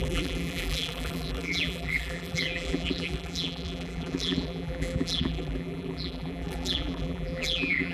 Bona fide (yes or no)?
no